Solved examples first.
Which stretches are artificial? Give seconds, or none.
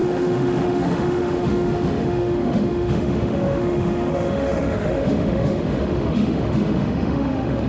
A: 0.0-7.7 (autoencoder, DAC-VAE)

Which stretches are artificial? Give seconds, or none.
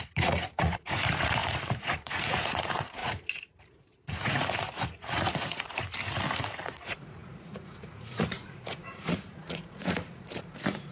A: 0.0-5.9 (vocoder, Vocos); 6.4-10.9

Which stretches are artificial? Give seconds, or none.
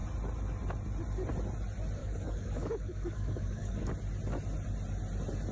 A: 2.0-3.9 (codec, DAC)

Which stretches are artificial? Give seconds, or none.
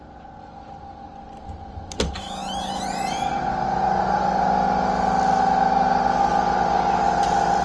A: none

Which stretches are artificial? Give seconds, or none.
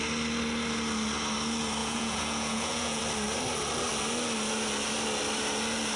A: 1.8-3.0 (vocoder, Vocos)